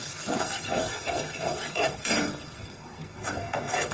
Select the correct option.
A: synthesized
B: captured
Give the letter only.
A